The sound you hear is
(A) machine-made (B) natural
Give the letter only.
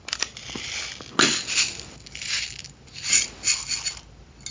B